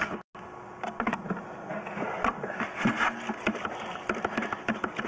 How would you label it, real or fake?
real